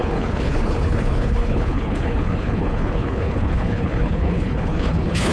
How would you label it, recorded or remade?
remade